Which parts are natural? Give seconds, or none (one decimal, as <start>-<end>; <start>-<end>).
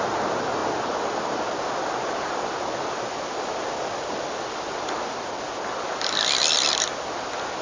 0.0-7.6